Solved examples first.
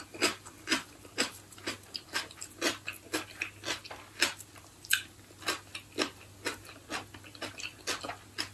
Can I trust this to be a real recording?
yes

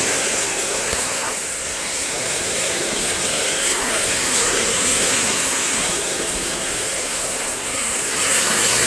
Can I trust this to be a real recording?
no